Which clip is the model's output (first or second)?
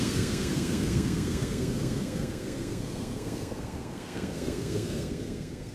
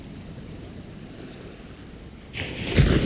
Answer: first